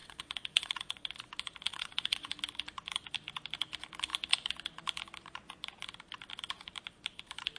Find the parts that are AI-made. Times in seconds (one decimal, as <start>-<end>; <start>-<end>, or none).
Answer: 0.0-1.1; 1.7-2.3